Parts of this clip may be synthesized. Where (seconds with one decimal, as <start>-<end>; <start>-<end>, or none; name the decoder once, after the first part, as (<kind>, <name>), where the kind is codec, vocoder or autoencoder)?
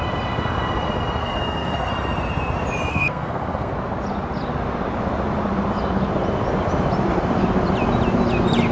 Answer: 1.2-1.9 (codec, SNAC); 2.9-3.7